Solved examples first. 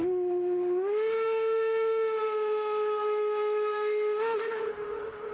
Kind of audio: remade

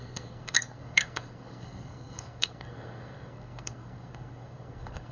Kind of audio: remade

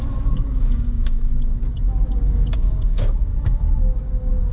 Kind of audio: remade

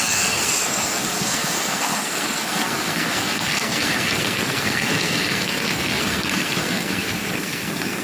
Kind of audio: remade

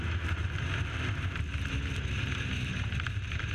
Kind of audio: recorded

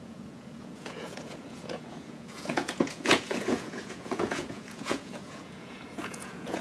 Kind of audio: remade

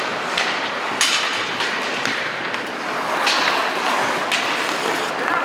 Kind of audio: recorded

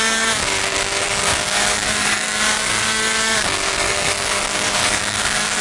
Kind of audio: remade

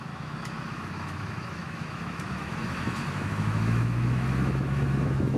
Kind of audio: remade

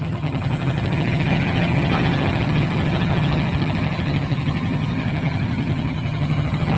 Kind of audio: remade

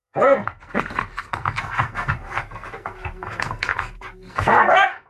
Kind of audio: remade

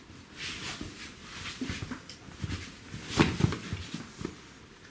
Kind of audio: recorded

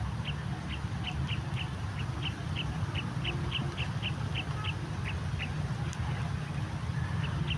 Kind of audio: recorded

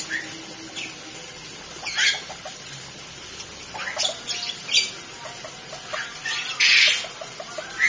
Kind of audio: recorded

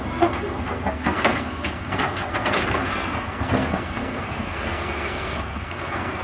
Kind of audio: remade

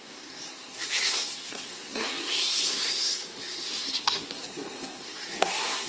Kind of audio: remade